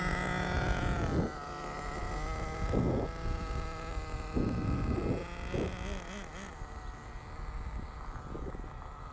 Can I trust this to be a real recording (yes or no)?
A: yes